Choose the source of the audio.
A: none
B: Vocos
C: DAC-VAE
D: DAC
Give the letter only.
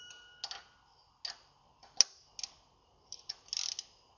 A